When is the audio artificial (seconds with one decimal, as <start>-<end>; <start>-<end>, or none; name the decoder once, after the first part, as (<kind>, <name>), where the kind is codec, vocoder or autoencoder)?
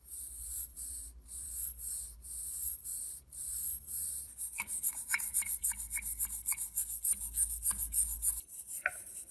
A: 0.0-5.6 (vocoder, BigVGAN v2); 8.6-9.3